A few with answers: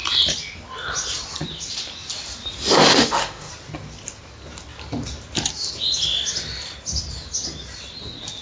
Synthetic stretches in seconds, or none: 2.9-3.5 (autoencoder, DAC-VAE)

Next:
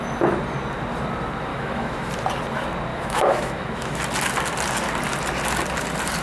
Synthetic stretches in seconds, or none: 1.5-2.1 (autoencoder, DAC-VAE); 2.9-4.0

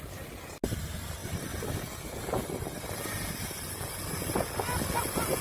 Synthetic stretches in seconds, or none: 1.2-3.3 (vocoder, BigVGAN v2)